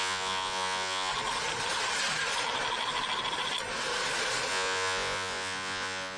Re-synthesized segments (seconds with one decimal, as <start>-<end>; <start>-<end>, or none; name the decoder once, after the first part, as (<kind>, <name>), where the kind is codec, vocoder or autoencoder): 0.0-1.1 (vocoder, Vocos); 4.5-6.2